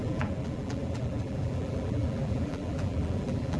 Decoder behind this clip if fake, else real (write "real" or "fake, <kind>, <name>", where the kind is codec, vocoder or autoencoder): fake, vocoder, BigVGAN v2